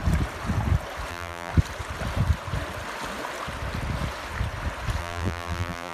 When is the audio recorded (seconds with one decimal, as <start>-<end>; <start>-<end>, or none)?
0.0-1.1; 1.5-5.0